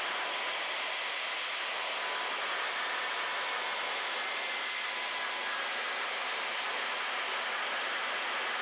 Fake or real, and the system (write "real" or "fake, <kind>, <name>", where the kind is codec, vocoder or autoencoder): real